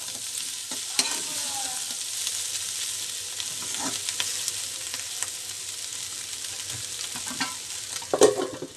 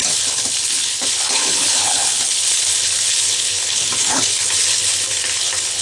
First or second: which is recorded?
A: first